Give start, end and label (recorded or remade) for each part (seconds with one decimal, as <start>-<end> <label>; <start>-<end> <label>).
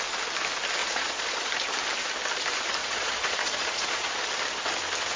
0.0-0.8 recorded; 0.8-1.5 remade; 1.5-2.8 recorded; 2.8-4.1 remade; 4.1-5.2 recorded